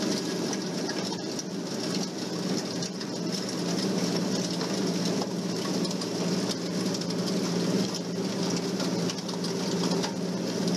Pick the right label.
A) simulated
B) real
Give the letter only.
B